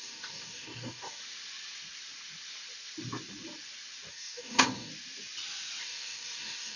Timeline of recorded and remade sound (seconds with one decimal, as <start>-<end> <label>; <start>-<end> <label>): 0.0-1.2 remade; 1.2-4.1 recorded; 4.1-4.9 remade; 4.9-5.8 recorded; 5.8-6.8 remade